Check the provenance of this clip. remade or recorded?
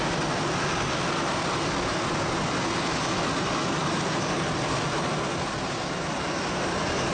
recorded